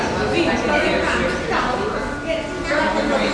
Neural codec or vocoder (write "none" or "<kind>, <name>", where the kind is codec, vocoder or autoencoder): none